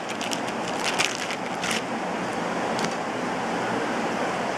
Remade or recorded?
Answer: recorded